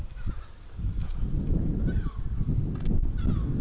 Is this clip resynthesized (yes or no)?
no